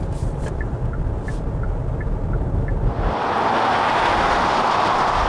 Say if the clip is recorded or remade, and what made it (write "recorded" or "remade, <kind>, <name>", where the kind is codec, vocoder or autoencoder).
recorded